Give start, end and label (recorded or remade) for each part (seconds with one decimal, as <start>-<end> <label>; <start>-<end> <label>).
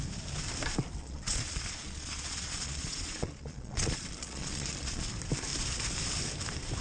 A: 0.0-1.0 recorded; 1.0-5.1 remade; 5.1-6.8 recorded